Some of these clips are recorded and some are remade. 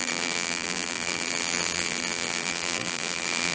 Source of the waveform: remade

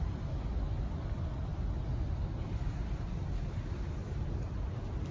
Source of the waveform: recorded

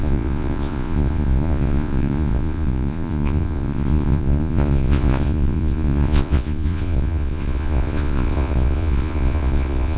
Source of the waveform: remade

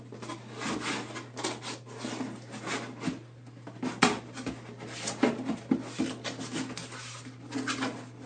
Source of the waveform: recorded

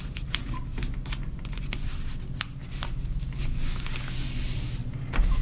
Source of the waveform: recorded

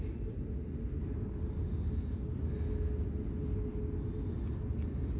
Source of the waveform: recorded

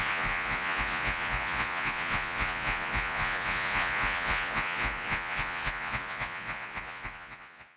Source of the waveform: remade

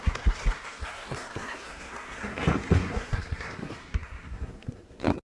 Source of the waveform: remade